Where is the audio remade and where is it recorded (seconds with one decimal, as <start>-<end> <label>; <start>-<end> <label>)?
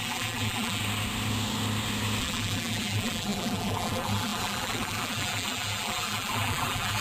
0.0-0.8 remade; 0.8-2.2 recorded; 2.2-7.0 remade